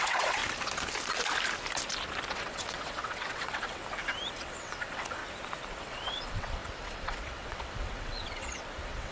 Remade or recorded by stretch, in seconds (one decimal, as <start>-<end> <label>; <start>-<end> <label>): 0.0-0.4 remade; 0.4-2.3 recorded; 2.3-3.8 remade; 3.8-4.3 recorded; 4.3-5.2 remade; 5.2-5.8 recorded; 5.8-9.1 remade